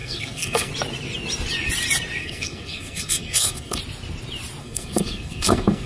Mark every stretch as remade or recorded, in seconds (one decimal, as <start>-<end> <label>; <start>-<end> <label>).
0.0-0.7 remade; 0.7-2.2 recorded; 2.2-3.8 remade; 3.8-4.6 recorded; 4.6-5.9 remade